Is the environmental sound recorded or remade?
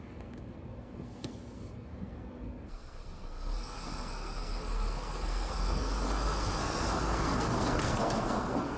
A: remade